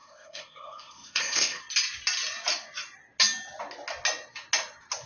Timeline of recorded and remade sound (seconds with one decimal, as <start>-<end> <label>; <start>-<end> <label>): 0.0-1.6 remade; 1.6-5.1 recorded